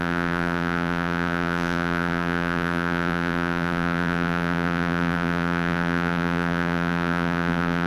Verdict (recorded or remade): remade